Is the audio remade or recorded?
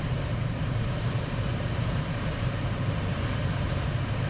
remade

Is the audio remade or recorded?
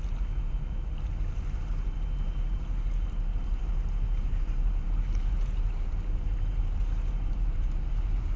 remade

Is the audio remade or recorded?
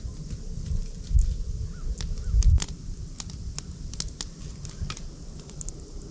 recorded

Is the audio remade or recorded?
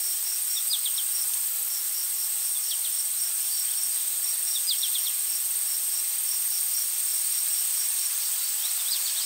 recorded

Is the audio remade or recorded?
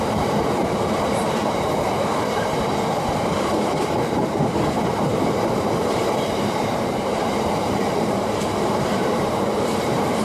remade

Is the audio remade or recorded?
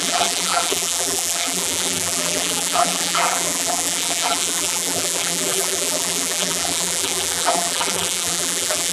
remade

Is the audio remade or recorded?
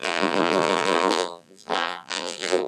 remade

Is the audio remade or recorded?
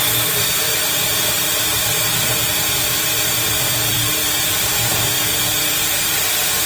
remade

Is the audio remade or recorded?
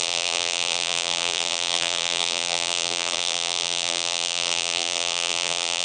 remade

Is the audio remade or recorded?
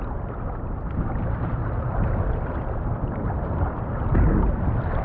remade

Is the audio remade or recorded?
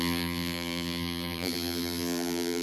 remade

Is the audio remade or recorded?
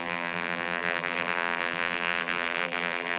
remade